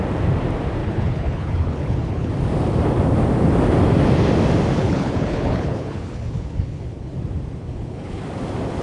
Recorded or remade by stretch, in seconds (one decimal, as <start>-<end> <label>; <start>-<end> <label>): 0.0-0.8 recorded; 0.8-2.3 remade; 2.3-4.8 recorded; 4.8-7.1 remade; 7.1-7.6 recorded; 7.6-8.2 remade; 8.2-8.8 recorded